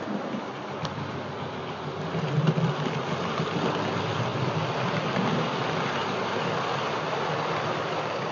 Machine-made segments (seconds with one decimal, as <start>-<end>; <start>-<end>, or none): none